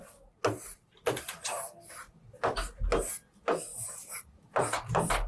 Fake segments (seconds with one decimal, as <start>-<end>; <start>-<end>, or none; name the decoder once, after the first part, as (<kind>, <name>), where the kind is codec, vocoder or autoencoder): none